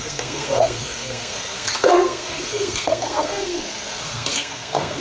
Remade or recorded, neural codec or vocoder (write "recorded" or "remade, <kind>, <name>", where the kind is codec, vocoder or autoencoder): remade, codec, SNAC